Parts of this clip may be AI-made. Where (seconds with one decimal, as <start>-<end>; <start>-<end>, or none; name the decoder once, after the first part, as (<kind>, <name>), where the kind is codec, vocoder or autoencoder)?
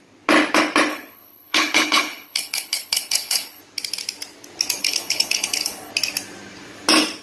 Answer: 0.9-3.6 (codec, HILCodec); 4.8-5.9